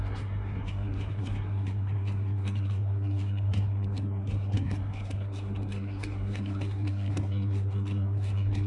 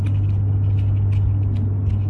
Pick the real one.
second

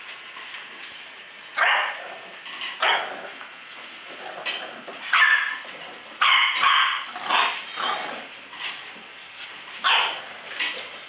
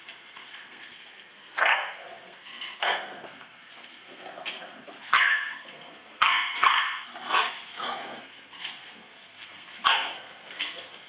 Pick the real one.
first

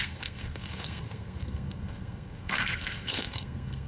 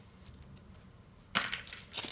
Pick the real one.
second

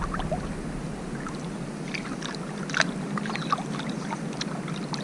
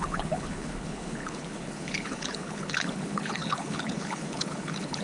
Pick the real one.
first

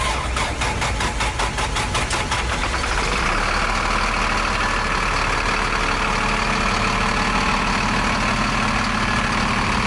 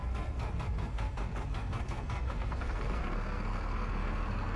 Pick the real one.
first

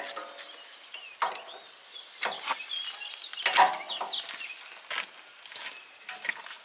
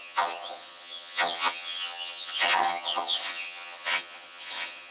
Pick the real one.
first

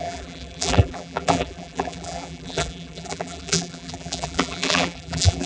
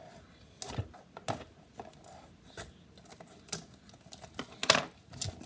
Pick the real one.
second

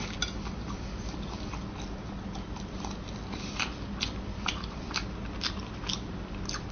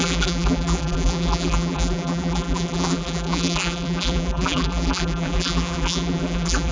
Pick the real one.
first